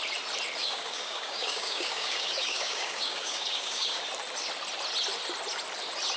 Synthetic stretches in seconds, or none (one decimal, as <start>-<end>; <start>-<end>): 0.6-4.0